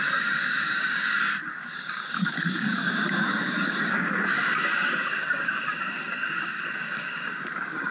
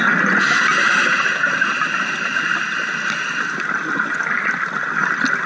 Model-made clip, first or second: first